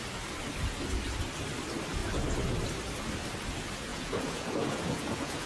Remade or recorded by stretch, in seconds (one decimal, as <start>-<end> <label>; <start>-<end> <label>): 0.0-3.9 recorded; 3.9-5.5 remade